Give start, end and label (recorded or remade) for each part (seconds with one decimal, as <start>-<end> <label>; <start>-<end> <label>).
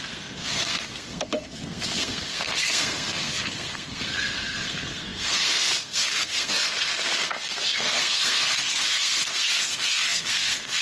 0.0-10.8 remade